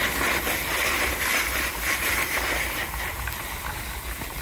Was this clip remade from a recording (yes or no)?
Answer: yes